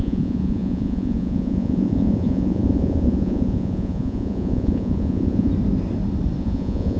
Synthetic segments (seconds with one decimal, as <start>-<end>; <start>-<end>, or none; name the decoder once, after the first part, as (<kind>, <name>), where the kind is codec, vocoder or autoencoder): 0.0-5.5 (vocoder, Vocos); 6.4-7.0